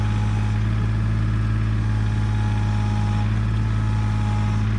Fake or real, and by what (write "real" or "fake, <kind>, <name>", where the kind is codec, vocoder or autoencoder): real